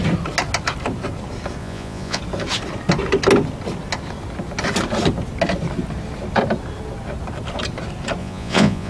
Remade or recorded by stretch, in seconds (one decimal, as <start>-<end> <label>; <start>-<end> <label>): 0.0-1.6 recorded; 1.6-2.2 remade; 2.2-8.2 recorded; 8.2-8.9 remade